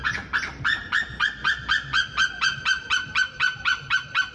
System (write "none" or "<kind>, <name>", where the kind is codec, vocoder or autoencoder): none